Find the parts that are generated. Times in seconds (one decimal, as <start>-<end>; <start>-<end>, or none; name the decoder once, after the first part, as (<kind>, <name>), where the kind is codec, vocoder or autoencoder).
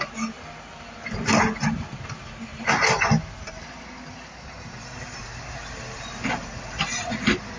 none